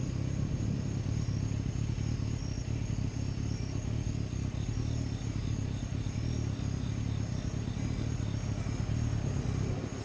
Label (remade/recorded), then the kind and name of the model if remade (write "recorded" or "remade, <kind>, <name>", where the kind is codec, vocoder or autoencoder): recorded